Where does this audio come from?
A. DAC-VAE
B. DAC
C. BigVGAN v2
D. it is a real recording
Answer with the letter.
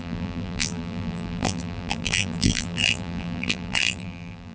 C